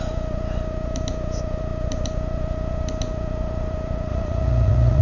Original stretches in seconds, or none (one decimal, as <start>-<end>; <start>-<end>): 0.0-4.1